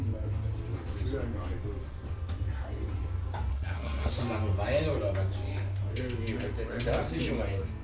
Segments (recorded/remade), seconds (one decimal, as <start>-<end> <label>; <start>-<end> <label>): 0.0-3.5 recorded; 3.5-4.1 remade; 4.1-7.8 recorded